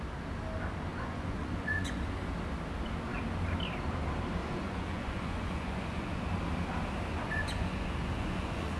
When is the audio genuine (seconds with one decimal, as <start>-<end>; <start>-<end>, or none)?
0.0-0.9; 2.0-4.4; 6.2-7.1